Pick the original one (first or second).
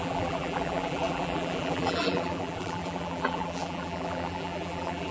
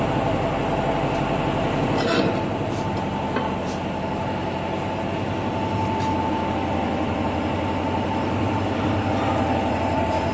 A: second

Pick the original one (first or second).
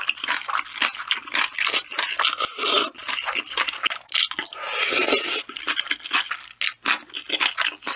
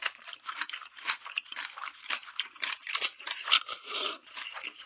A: first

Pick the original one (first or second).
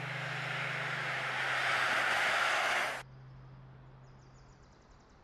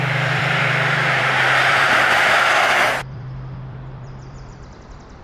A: first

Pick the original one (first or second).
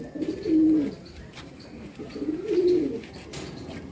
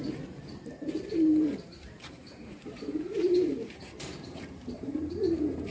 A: first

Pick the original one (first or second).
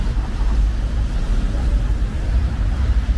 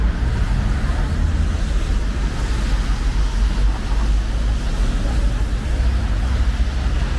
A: second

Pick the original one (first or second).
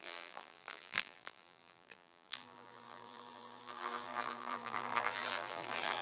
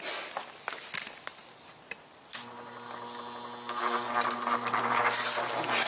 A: second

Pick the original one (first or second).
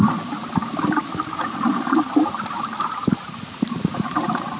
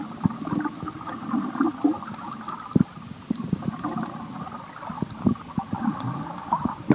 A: second